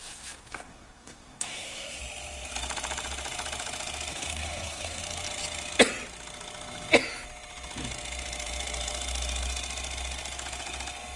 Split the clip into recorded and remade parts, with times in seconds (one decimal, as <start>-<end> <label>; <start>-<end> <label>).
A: 0.0-2.0 remade; 2.0-4.1 recorded; 4.1-5.0 remade; 5.0-11.2 recorded